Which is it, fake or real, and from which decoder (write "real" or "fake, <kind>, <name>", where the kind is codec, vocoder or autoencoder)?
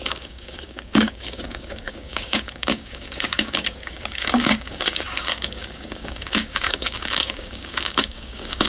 fake, codec, DAC